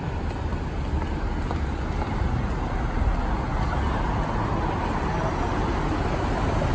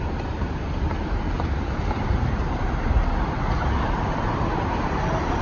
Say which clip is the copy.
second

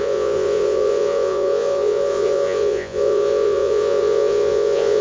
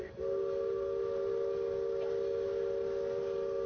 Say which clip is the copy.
first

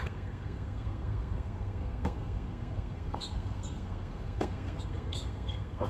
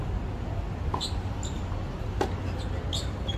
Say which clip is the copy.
first